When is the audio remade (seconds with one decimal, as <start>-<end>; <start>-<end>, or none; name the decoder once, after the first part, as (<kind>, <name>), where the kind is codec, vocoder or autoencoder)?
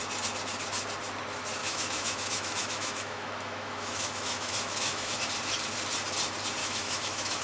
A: 1.6-5.2 (autoencoder, DAC-VAE); 6.6-7.4